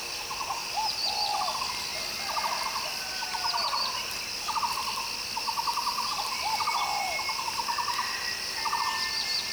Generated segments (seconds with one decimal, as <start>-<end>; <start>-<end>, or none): none